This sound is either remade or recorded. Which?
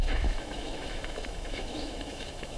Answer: remade